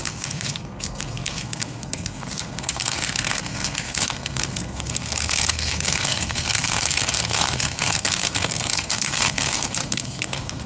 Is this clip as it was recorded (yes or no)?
no